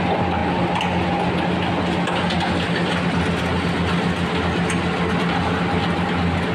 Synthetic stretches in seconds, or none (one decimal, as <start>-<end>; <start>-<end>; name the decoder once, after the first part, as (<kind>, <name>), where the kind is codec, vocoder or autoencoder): none